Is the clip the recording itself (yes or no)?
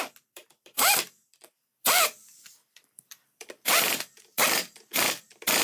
no